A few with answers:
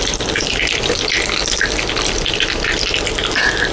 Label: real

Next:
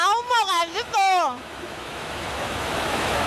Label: fake